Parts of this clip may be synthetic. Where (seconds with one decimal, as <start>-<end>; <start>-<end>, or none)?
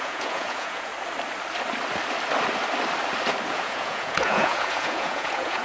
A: 0.0-0.9; 3.5-5.6